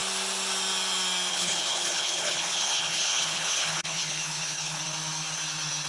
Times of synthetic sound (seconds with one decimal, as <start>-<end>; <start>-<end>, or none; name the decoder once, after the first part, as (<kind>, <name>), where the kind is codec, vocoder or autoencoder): 1.3-4.8 (codec, HILCodec)

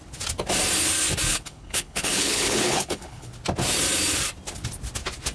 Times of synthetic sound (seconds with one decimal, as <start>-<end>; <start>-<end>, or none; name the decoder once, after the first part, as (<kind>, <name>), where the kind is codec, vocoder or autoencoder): 1.3-3.3 (codec, HILCodec)

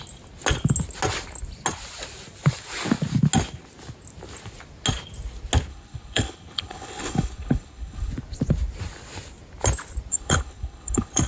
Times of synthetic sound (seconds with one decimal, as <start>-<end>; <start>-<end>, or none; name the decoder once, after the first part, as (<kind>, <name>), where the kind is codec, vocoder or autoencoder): 5.7-8.1 (codec, HILCodec); 10.1-11.3

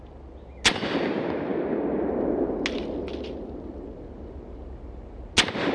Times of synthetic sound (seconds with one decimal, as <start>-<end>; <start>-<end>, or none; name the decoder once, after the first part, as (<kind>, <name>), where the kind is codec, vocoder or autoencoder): none

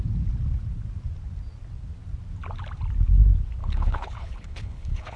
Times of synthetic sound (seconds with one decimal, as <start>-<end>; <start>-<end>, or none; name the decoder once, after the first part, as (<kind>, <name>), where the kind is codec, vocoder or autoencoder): 3.6-5.2 (codec, HILCodec)

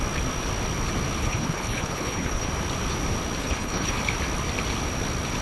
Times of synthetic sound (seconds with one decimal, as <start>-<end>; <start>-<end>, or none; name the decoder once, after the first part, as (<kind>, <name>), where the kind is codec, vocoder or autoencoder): 1.2-2.5 (codec, HILCodec); 3.4-4.0

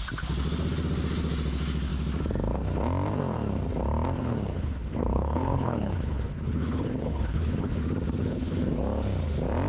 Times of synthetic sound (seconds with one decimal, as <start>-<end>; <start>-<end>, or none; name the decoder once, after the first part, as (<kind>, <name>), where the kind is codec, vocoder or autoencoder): 4.2-7.8 (codec, HILCodec); 8.2-8.8